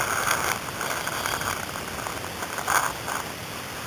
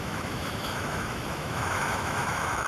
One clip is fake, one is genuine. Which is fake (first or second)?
second